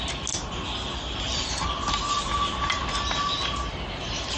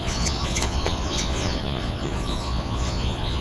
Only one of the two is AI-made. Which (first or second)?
second